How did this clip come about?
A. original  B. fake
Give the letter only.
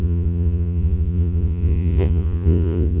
B